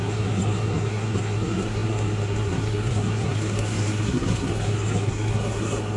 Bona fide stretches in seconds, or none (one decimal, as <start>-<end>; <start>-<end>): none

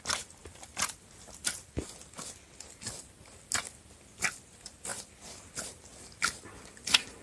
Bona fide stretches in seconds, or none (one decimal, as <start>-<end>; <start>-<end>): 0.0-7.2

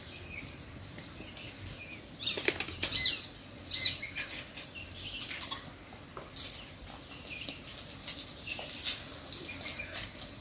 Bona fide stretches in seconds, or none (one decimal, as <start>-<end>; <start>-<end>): 0.0-10.4

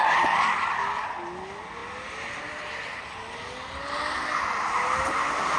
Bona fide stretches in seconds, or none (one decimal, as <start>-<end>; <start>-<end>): 0.0-5.6

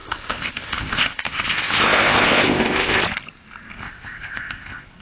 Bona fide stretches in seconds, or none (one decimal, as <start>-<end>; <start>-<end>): 3.0-3.8

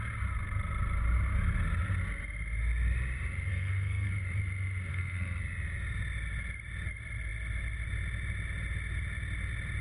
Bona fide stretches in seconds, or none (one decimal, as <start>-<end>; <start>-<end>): 0.0-3.5; 4.1-4.9; 5.4-9.8

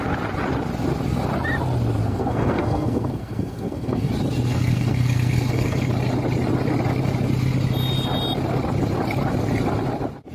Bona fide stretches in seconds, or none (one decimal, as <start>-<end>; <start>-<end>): 0.0-2.0; 4.1-4.5; 5.9-10.3

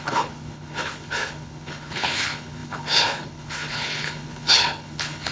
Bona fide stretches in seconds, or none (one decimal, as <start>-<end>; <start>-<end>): none